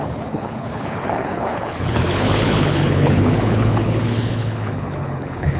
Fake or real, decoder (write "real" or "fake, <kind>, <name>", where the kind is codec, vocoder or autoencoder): fake, codec, HILCodec